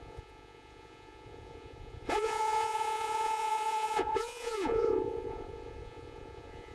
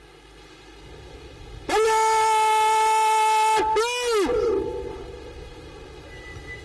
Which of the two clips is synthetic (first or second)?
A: first